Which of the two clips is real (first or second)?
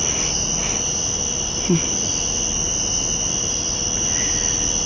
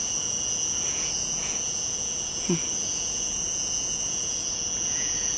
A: first